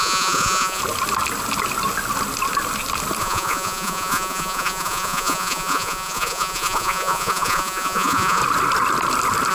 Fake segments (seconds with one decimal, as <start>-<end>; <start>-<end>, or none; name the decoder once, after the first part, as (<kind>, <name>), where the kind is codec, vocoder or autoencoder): 0.0-0.8 (vocoder, Vocos); 3.2-8.4